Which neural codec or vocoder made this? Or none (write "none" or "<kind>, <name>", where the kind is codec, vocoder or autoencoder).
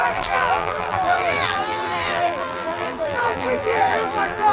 vocoder, BigVGAN v2